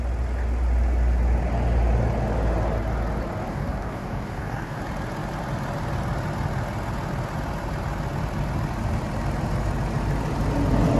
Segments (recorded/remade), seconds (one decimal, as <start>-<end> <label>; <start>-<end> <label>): 0.0-3.5 recorded; 3.5-4.8 remade; 4.8-11.0 recorded